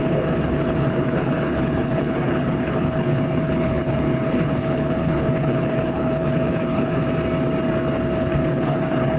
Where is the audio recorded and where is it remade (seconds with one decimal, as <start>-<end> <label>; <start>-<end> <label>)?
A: 0.0-7.0 remade; 7.0-8.2 recorded; 8.2-9.2 remade